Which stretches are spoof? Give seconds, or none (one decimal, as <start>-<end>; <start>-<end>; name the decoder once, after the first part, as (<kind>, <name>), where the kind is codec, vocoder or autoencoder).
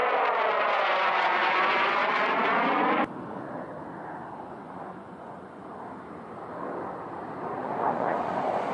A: 0.7-2.0 (vocoder, Vocos); 3.3-3.7; 4.5-5.7; 7.3-8.7